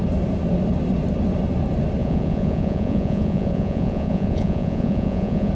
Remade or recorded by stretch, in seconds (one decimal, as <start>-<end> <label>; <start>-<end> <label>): 0.0-2.0 recorded; 2.0-5.5 remade